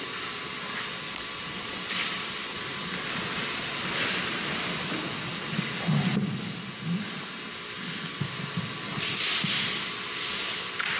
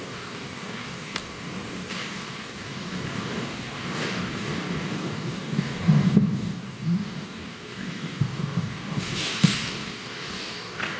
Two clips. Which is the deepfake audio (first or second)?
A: second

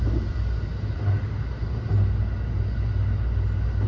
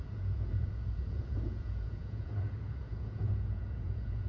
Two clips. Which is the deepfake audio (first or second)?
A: second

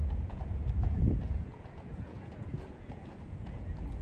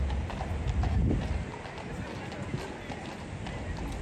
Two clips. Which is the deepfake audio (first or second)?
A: first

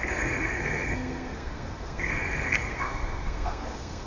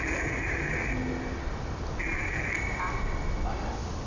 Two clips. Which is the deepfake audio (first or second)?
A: first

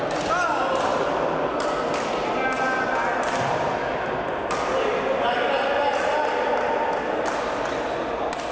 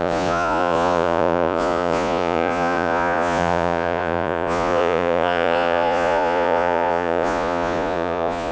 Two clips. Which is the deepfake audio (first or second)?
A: second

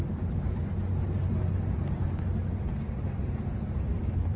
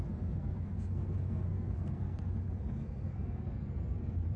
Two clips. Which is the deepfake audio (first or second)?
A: second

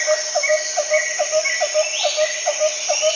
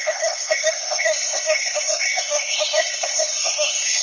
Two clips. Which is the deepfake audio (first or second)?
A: second